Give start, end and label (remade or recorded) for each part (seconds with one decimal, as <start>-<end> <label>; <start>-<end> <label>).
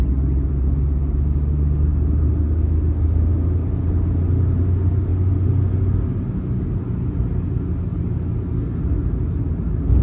0.0-10.0 recorded